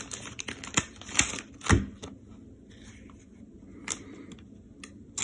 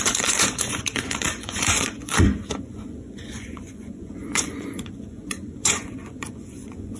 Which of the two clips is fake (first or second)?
second